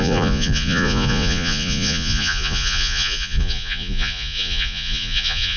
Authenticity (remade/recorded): remade